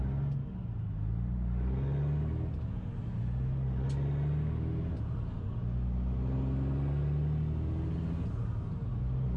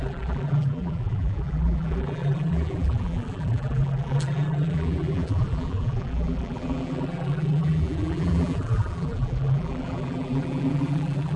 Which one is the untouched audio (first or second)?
first